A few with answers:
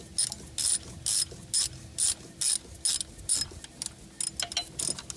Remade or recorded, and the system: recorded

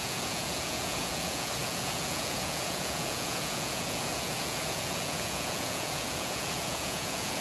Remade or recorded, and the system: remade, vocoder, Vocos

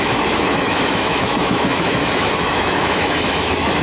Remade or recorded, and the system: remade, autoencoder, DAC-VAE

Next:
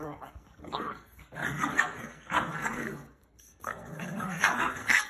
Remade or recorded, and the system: remade, codec, SNAC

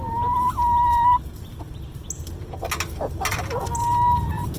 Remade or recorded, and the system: recorded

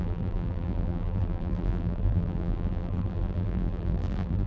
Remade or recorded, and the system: remade, vocoder, BigVGAN v2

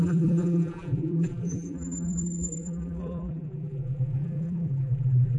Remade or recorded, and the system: remade, vocoder, BigVGAN v2